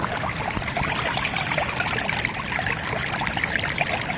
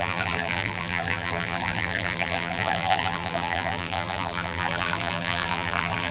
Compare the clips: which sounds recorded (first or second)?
first